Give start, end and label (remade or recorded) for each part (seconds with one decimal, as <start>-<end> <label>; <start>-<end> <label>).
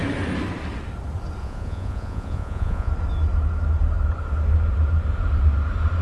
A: 0.0-1.4 recorded; 1.4-2.9 remade; 2.9-6.0 recorded